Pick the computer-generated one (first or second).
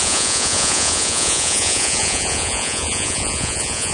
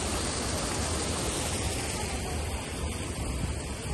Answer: first